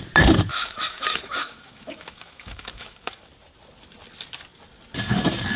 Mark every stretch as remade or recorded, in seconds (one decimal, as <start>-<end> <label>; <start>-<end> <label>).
0.0-0.5 recorded; 0.5-3.2 remade; 3.2-5.6 recorded